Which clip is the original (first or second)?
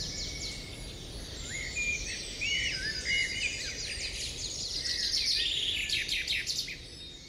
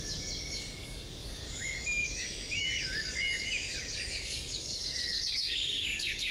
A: first